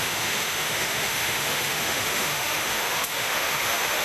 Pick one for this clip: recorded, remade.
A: remade